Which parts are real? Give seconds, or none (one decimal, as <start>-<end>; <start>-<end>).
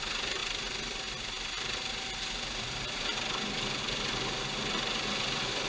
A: 0.0-5.7